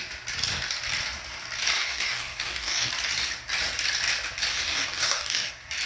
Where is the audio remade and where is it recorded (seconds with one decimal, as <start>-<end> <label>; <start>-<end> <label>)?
0.0-1.8 recorded; 1.8-2.9 remade; 2.9-4.5 recorded; 4.5-5.5 remade; 5.5-5.9 recorded